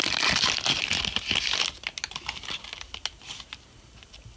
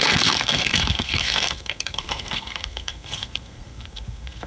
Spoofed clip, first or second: second